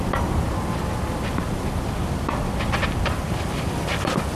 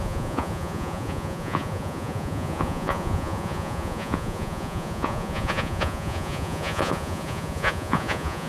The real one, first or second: first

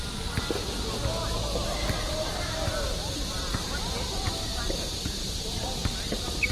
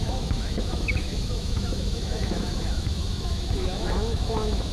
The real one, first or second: first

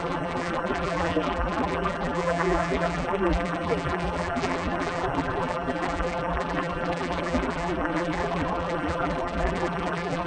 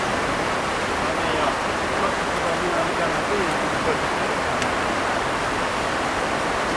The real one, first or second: second